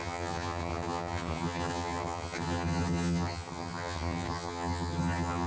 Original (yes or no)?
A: no